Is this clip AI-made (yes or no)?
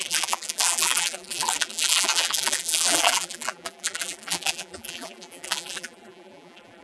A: yes